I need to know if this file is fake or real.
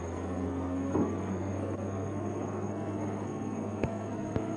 fake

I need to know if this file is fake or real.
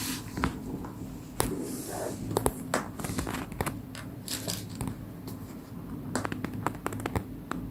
real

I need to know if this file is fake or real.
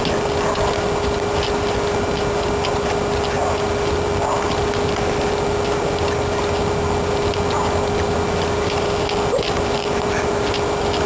real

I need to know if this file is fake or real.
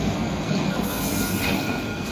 fake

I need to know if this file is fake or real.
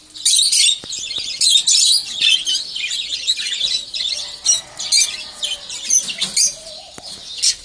real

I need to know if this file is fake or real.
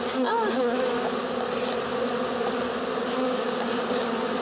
real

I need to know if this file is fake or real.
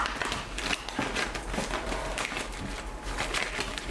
real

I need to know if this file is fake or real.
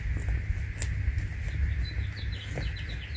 real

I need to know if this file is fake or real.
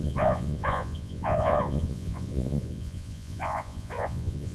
fake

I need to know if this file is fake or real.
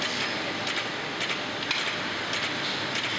real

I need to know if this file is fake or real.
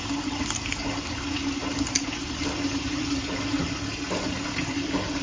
real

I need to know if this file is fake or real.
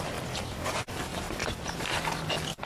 fake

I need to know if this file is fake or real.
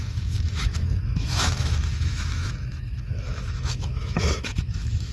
fake